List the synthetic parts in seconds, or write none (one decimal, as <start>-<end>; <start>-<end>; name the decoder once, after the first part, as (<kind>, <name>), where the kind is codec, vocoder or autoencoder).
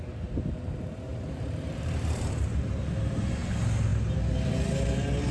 1.1-2.8 (vocoder, BigVGAN v2)